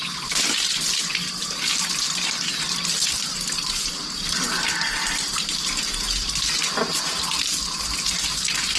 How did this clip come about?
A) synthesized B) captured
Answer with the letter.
B